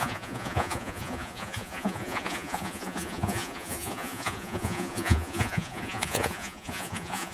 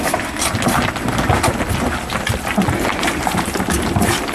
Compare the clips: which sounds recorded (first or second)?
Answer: second